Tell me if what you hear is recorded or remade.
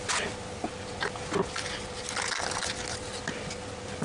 recorded